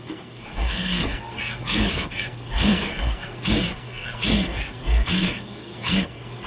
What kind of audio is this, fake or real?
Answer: fake